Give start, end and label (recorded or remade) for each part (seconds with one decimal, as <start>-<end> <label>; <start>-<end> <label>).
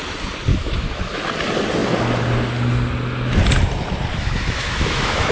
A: 0.0-0.5 recorded; 0.5-1.3 remade; 1.3-4.1 recorded; 4.1-5.3 remade